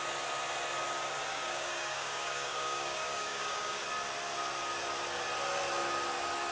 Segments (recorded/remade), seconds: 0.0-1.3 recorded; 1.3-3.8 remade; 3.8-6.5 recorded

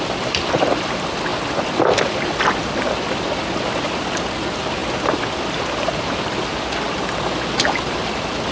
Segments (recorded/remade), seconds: 0.0-1.3 recorded; 1.3-2.5 remade; 2.5-8.5 recorded